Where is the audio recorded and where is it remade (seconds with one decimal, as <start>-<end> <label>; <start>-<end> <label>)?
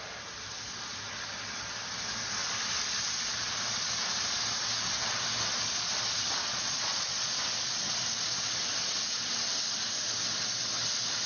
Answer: 0.0-6.4 recorded; 6.4-7.3 remade; 7.3-11.3 recorded